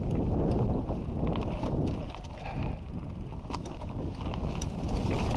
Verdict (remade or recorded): recorded